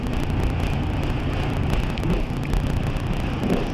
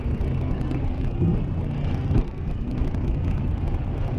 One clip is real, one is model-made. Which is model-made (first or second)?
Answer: second